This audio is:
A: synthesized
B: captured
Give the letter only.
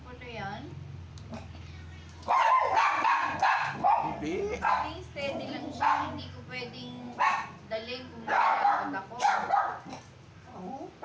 B